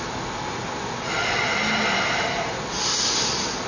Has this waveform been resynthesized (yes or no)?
no